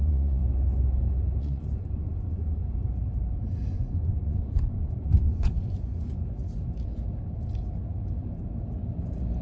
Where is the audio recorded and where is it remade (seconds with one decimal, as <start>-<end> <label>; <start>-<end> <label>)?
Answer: 0.0-0.4 remade; 0.4-1.4 recorded; 1.4-2.6 remade; 2.6-3.7 recorded; 3.7-6.2 remade; 6.2-9.4 recorded